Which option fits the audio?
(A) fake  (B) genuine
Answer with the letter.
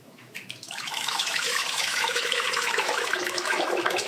A